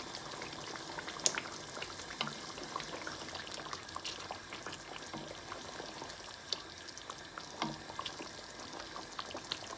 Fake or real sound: real